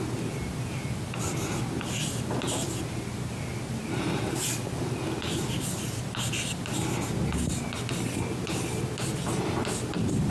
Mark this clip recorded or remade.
recorded